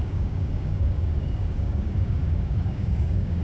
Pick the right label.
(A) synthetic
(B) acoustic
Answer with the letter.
A